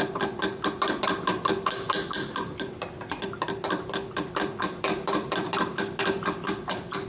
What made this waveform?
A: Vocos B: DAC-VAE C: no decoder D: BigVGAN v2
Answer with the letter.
C